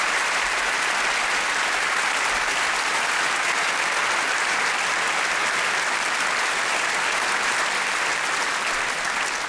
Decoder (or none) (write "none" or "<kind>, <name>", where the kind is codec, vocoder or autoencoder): none